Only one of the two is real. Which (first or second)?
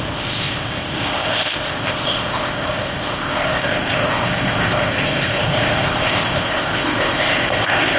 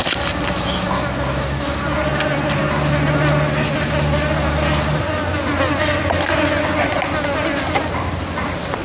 second